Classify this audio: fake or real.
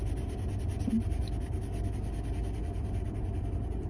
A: real